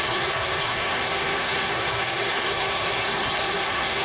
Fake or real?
fake